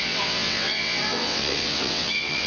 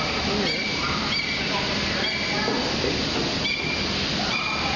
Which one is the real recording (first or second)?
second